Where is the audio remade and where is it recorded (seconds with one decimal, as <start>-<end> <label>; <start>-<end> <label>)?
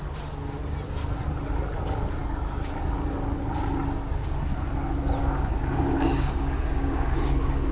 0.0-5.2 recorded; 5.2-7.7 remade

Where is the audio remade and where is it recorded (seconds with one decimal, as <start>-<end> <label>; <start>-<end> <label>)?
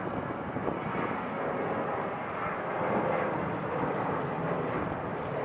0.0-5.4 recorded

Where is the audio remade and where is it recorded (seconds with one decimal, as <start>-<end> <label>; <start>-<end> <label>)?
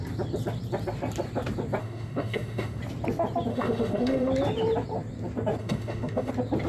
0.0-1.8 recorded; 1.8-2.8 remade; 2.8-3.5 recorded; 3.5-4.3 remade; 4.3-5.6 recorded; 5.6-6.3 remade; 6.3-6.7 recorded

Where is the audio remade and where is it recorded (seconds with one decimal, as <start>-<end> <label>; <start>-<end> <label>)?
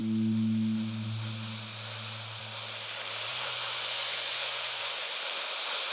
0.0-3.3 recorded; 3.3-5.1 remade; 5.1-5.9 recorded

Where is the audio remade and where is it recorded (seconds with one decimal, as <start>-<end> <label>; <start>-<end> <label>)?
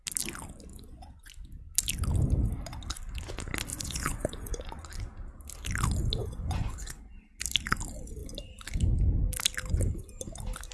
0.0-0.7 recorded; 0.7-1.3 remade; 1.3-3.7 recorded; 3.7-4.8 remade; 4.8-6.2 recorded; 6.2-7.0 remade; 7.0-10.7 recorded